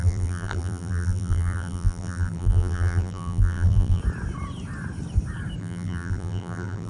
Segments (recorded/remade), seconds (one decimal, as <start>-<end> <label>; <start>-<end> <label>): 0.0-4.0 remade; 4.0-5.6 recorded; 5.6-6.9 remade